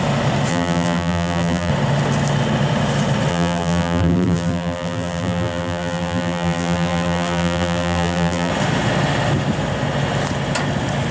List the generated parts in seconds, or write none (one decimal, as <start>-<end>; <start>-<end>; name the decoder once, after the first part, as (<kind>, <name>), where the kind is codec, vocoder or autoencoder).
0.5-1.7 (vocoder, BigVGAN v2); 3.3-8.5